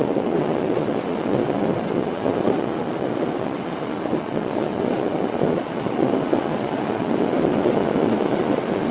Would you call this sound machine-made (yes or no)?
yes